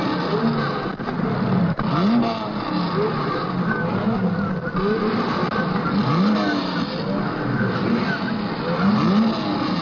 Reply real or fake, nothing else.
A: real